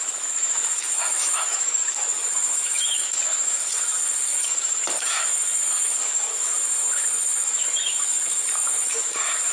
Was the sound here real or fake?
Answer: fake